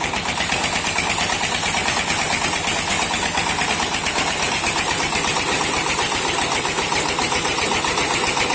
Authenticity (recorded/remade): recorded